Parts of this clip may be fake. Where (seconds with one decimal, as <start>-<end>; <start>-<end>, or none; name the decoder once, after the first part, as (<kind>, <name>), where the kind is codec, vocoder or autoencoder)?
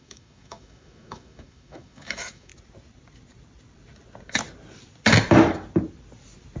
0.0-2.5 (autoencoder, DAC-VAE)